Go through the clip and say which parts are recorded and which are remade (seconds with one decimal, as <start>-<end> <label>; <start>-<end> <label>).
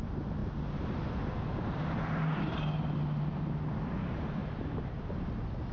0.0-5.7 recorded